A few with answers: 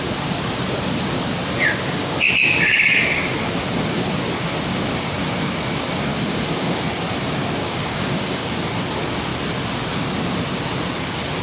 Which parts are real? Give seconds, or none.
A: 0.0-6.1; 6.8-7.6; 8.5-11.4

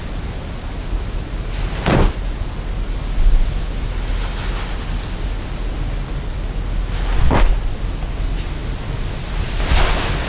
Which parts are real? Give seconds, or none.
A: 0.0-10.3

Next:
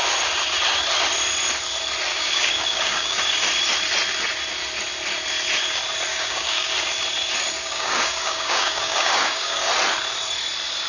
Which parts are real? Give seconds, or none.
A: 0.0-2.1; 3.2-6.1; 6.7-7.6; 9.7-10.9

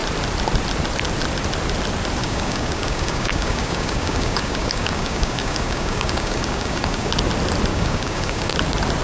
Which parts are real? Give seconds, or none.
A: 0.0-2.2; 7.1-7.7; 8.5-9.0